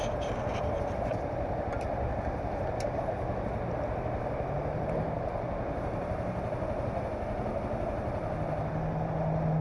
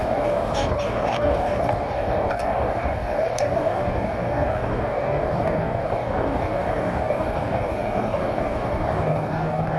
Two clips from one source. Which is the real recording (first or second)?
first